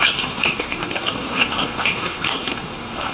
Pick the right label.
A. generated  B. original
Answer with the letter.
A